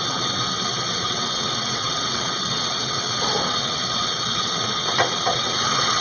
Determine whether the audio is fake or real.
fake